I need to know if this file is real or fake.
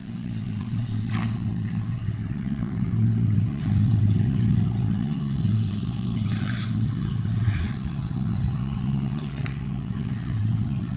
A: fake